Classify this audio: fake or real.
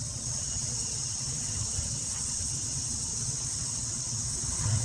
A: fake